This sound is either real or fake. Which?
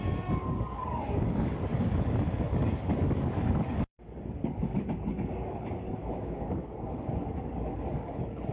fake